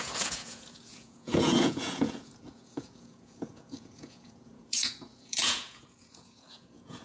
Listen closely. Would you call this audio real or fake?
fake